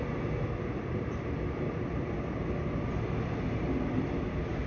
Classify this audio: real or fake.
real